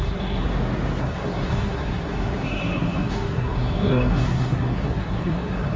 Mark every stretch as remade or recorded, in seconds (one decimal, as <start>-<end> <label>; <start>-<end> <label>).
0.0-0.4 remade; 0.4-1.0 recorded; 1.0-5.8 remade